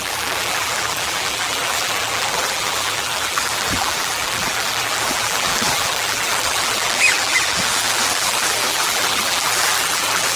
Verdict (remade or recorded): remade